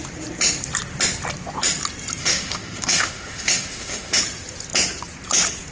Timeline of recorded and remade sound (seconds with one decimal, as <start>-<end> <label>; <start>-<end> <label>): 0.0-2.2 recorded; 2.2-4.2 remade; 4.2-5.7 recorded